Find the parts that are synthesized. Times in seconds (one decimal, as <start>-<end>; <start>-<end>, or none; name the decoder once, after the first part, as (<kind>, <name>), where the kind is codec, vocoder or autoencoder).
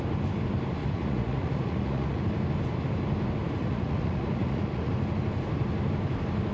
0.8-2.2 (vocoder, Vocos); 3.6-4.9